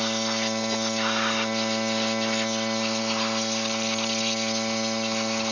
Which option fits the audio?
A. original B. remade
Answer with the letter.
A